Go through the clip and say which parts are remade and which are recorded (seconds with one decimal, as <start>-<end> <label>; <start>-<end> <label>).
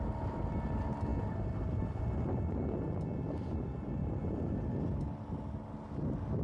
0.0-6.4 recorded